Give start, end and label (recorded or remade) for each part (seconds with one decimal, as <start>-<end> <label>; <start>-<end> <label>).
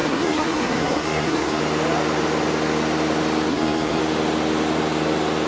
0.0-1.6 remade; 1.6-3.5 recorded; 3.5-4.0 remade; 4.0-5.5 recorded